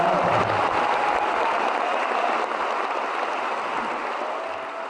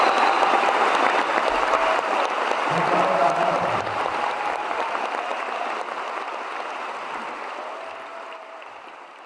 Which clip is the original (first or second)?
first